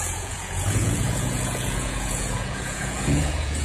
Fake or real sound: fake